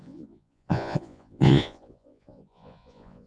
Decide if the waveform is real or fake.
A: fake